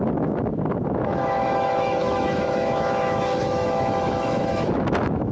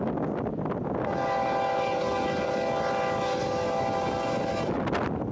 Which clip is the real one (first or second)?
second